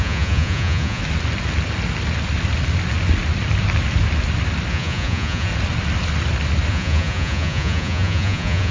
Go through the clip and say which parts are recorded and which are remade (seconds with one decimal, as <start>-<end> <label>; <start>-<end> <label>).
0.0-1.0 remade; 1.0-4.7 recorded; 4.7-5.5 remade; 5.5-6.7 recorded; 6.7-8.7 remade